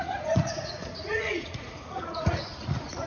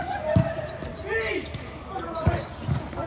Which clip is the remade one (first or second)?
first